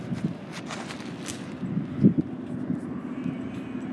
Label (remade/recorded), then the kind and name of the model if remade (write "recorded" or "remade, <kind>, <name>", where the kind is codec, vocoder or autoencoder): recorded